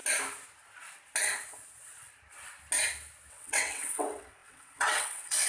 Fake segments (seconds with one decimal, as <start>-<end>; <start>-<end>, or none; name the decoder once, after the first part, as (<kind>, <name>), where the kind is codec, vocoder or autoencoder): 3.3-5.5 (vocoder, WaveNeXt)